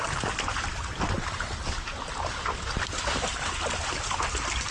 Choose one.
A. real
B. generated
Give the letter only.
A